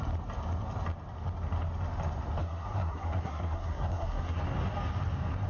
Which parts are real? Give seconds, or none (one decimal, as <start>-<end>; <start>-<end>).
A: 0.0-2.4; 4.4-5.5

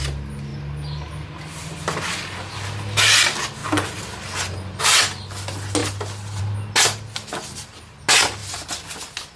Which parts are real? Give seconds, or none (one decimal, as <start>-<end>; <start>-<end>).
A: 0.0-9.4